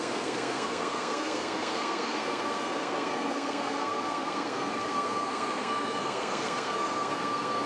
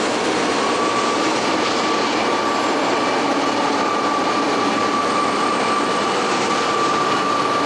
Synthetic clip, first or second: first